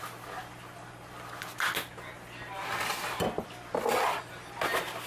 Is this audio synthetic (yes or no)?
no